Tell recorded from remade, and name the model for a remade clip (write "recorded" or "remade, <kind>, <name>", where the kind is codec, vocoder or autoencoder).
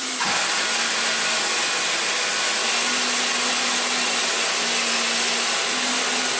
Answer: recorded